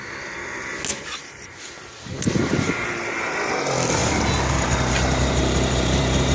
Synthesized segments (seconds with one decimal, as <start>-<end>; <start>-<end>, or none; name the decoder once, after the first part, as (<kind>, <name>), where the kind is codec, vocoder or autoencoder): 0.9-2.6 (vocoder, BigVGAN v2); 4.0-6.3